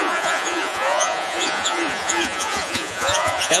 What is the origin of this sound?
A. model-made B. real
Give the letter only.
A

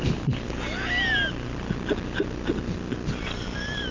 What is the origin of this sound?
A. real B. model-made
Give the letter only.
A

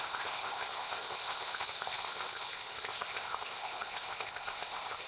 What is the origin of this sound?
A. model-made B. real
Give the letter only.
A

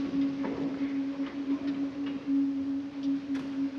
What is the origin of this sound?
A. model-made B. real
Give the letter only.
B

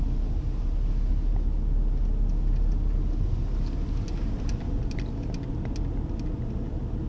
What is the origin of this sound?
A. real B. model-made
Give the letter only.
A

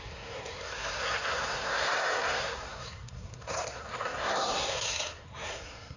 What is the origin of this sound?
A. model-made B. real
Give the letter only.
A